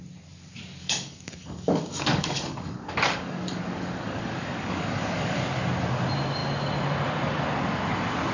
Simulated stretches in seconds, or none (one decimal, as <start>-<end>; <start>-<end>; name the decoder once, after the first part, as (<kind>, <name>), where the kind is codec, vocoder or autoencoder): 0.8-5.4 (codec, DAC)